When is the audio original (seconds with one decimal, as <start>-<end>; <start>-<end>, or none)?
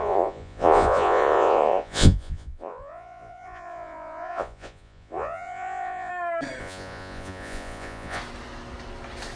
6.1-6.6; 8.2-9.4